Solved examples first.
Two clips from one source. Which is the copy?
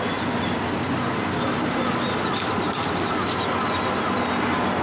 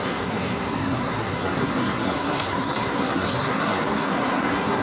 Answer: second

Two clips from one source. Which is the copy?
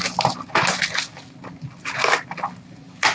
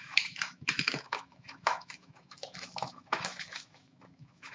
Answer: second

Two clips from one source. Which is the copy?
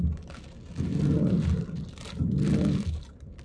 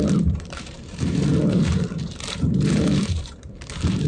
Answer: second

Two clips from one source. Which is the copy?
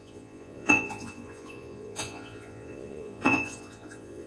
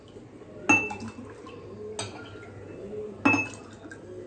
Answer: first